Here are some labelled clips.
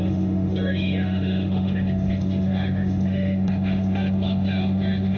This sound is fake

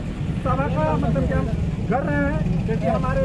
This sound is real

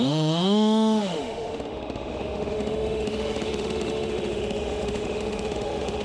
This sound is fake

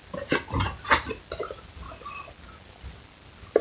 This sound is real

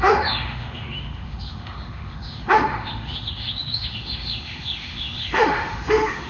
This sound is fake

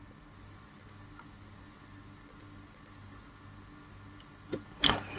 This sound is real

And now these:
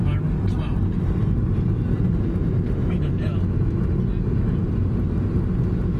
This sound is real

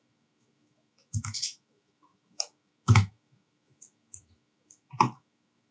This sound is fake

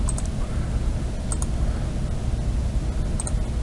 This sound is real